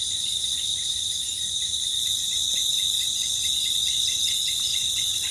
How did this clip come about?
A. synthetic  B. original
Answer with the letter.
B